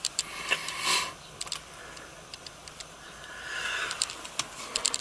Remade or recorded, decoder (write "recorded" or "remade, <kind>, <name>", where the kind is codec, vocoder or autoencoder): remade, vocoder, BigVGAN v2